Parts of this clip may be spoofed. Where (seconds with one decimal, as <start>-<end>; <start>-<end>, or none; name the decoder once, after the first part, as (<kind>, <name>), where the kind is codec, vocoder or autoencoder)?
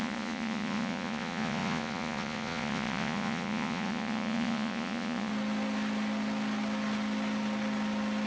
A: 0.0-5.3 (vocoder, Vocos)